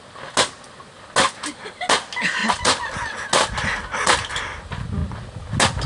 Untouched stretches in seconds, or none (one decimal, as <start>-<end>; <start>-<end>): 0.0-5.9